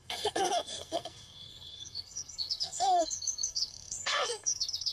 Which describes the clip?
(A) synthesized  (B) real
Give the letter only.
A